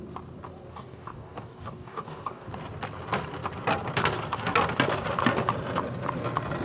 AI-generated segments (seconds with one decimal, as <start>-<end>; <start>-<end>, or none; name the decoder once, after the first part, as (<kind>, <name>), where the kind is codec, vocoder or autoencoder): 0.7-2.5 (codec, DAC)